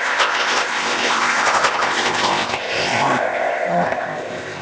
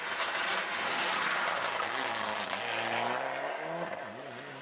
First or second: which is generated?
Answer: first